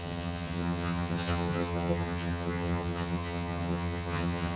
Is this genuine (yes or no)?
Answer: no